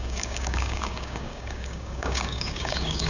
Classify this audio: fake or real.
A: fake